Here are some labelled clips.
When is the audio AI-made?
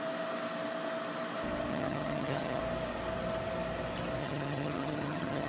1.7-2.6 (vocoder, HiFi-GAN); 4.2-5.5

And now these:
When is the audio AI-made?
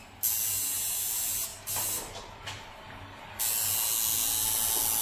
none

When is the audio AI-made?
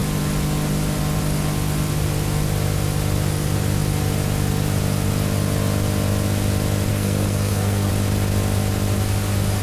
6.9-7.9 (codec, SNAC)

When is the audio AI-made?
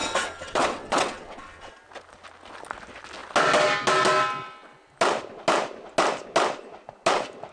0.0-1.7 (vocoder, WaveNeXt)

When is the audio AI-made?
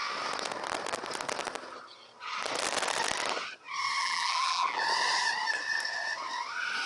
4.0-4.8 (vocoder, BigVGAN v2)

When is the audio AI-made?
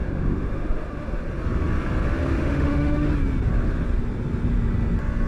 0.0-1.2 (autoencoder, DAC-VAE); 2.2-3.1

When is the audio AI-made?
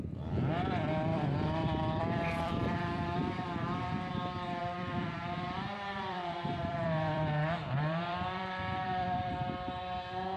1.1-4.1 (vocoder, BigVGAN v2); 4.6-9.3